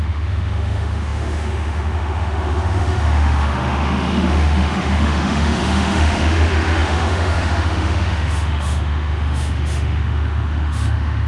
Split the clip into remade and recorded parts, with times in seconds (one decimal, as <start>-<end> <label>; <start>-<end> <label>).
0.0-11.3 remade